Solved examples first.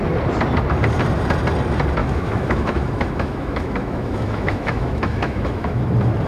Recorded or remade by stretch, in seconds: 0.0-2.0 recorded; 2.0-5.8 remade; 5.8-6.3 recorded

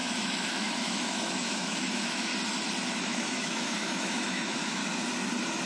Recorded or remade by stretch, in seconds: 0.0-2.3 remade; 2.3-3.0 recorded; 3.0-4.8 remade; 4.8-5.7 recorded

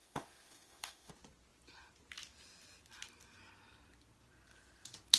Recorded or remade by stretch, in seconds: 0.0-1.1 remade; 1.1-5.2 recorded